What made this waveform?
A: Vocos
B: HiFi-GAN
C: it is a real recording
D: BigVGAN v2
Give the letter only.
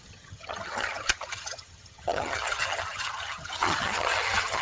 B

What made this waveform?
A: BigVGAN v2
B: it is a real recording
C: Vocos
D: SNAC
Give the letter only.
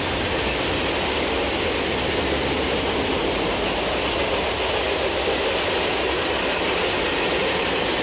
B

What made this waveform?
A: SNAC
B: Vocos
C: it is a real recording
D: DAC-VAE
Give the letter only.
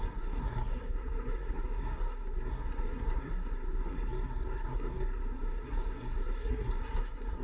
A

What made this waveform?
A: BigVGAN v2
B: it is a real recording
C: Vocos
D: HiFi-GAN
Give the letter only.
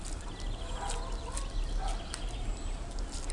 B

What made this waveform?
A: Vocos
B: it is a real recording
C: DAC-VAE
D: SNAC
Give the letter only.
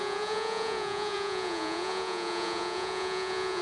A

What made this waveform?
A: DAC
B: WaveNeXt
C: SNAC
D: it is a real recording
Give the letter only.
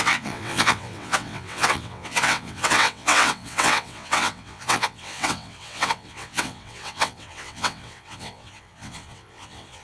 B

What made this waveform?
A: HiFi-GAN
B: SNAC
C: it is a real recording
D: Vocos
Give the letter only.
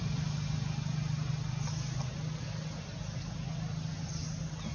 C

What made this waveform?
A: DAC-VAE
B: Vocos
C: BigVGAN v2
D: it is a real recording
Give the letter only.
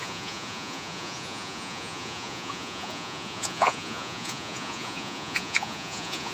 B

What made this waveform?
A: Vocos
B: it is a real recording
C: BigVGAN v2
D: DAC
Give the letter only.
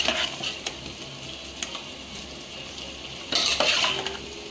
B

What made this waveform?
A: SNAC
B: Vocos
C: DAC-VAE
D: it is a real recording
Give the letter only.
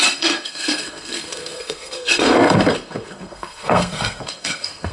A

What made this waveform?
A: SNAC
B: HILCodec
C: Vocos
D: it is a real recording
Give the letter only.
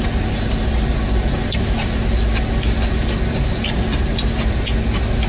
D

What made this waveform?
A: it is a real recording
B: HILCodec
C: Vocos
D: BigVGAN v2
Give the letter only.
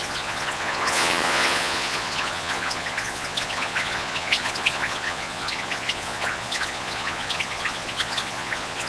C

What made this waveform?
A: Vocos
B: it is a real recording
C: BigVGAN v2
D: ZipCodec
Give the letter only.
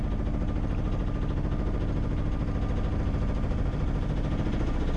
B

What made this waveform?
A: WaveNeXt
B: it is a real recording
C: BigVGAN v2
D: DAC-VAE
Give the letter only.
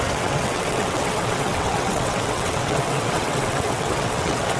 A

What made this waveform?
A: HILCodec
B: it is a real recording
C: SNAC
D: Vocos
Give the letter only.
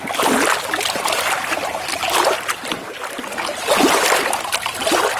B